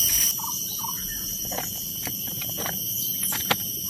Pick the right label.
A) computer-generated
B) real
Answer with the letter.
A